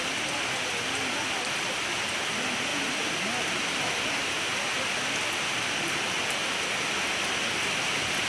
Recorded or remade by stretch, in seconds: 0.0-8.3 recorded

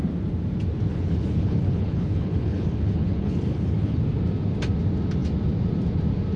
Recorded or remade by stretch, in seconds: 0.0-0.9 recorded; 0.9-4.0 remade; 4.0-6.4 recorded

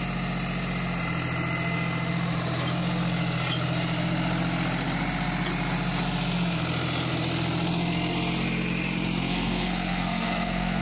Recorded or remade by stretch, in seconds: 0.0-9.2 recorded; 9.2-10.8 remade

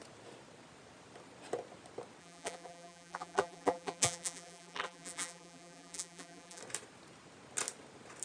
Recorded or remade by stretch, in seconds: 0.0-2.2 recorded; 2.2-6.6 remade; 6.6-8.2 recorded

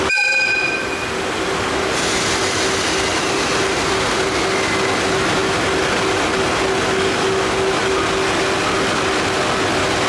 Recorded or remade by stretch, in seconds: 0.0-3.1 recorded; 3.1-4.4 remade; 4.4-10.1 recorded

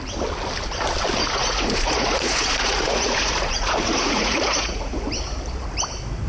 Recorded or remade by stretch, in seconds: 0.0-1.2 recorded; 1.2-5.0 remade; 5.0-6.3 recorded

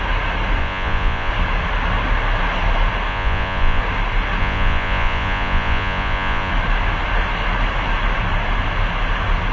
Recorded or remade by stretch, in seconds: 0.0-0.6 recorded; 0.6-1.3 remade; 1.3-3.1 recorded; 3.1-3.8 remade; 3.8-4.4 recorded; 4.4-6.5 remade; 6.5-9.5 recorded